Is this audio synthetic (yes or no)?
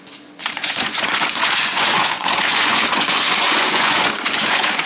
yes